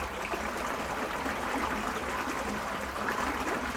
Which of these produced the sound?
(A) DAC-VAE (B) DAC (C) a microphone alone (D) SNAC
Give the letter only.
C